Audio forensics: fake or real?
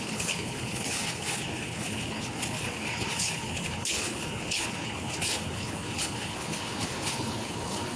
fake